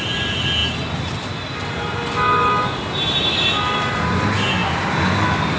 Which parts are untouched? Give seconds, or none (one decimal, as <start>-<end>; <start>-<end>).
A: 0.0-5.6